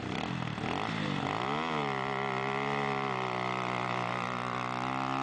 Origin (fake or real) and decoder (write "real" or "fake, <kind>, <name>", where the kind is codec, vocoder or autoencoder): real